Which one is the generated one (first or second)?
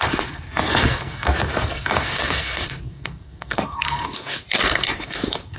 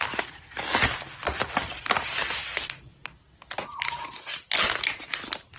first